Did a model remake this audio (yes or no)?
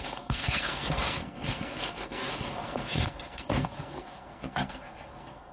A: yes